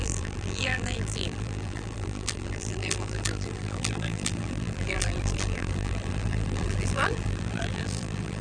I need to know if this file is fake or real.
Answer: fake